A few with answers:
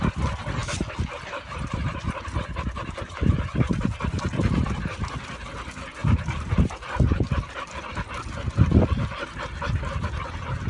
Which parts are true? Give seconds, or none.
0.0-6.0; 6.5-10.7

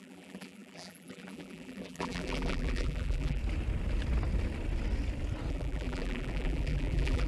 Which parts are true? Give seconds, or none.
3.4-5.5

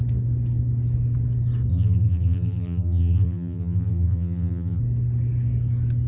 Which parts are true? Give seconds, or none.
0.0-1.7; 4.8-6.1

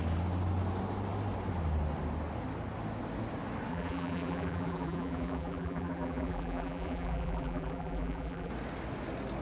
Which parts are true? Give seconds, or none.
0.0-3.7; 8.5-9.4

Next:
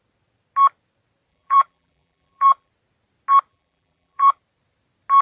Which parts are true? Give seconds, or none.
0.0-1.3; 2.7-3.5; 4.4-5.2

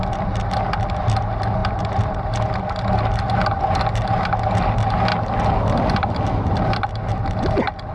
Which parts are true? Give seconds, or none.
0.0-7.9

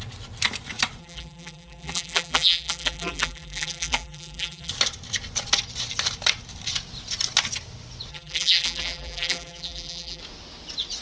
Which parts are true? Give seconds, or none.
0.0-1.0; 4.7-8.1; 10.2-11.0